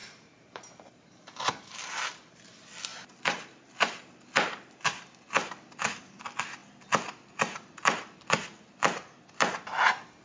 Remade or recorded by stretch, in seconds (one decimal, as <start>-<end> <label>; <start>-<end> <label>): 0.0-2.5 remade; 2.5-10.2 recorded